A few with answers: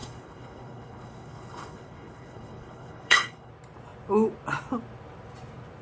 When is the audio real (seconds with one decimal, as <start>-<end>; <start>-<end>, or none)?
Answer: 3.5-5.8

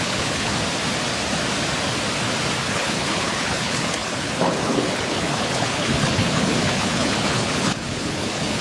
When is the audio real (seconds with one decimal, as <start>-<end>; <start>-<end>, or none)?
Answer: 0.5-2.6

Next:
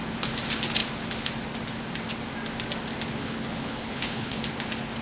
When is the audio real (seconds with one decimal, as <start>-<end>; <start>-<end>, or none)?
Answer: 0.0-3.2; 4.4-5.0

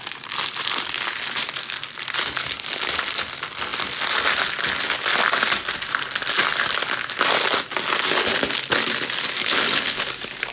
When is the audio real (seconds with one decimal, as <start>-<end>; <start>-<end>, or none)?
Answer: 0.0-9.4; 10.1-10.5